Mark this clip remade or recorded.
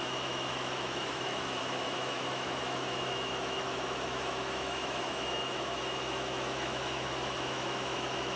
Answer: remade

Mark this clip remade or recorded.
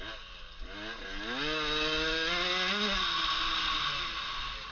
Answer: recorded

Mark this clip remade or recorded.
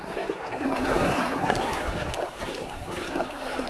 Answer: remade